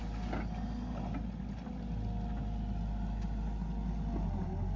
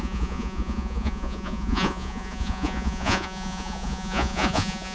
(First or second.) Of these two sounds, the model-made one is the second